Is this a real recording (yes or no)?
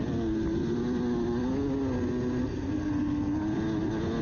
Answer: yes